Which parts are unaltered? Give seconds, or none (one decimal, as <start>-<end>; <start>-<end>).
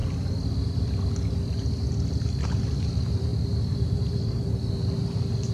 0.0-2.1